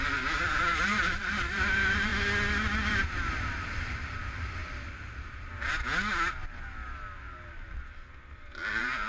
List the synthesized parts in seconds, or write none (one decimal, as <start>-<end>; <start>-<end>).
0.0-2.1; 2.9-4.6; 8.7-9.1